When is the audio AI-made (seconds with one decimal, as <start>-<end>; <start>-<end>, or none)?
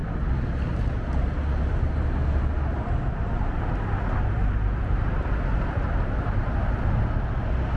3.1-6.6